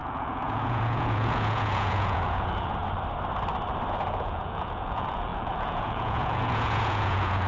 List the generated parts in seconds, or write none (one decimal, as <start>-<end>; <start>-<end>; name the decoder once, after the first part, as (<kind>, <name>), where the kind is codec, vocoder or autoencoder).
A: 0.0-2.8 (vocoder, Vocos); 3.9-7.5